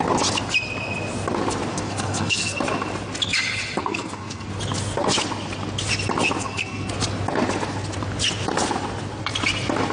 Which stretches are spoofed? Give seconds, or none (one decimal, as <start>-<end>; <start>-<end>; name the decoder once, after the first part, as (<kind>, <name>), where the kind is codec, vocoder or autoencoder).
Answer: 1.7-2.5 (codec, SNAC); 3.8-4.5; 6.4-6.9